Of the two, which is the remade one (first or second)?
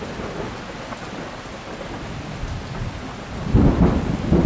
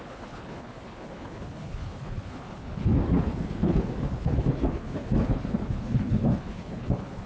second